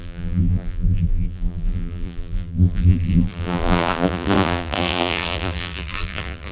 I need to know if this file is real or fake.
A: fake